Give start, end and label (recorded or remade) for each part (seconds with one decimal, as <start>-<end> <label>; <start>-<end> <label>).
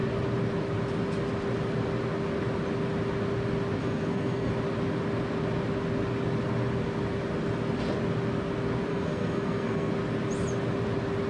0.0-3.8 recorded; 3.8-4.5 remade; 4.5-8.9 recorded; 8.9-9.9 remade; 9.9-11.3 recorded